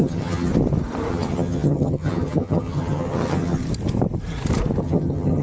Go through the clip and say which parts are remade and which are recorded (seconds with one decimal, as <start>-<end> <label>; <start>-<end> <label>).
0.0-0.5 remade; 0.5-1.1 recorded; 1.1-3.6 remade; 3.6-4.8 recorded; 4.8-5.4 remade